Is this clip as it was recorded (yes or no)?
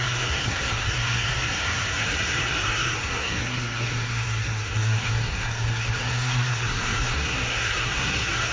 no